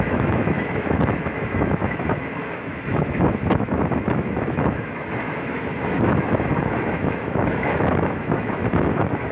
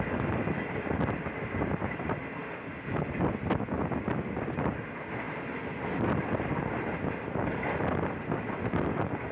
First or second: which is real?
second